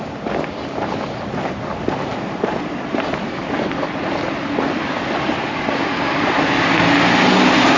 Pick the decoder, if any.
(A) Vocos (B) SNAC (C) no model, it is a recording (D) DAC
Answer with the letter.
C